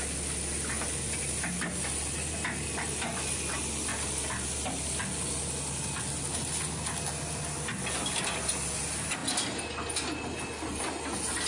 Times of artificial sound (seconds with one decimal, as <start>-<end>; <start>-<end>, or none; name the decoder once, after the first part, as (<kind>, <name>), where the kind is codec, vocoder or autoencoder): none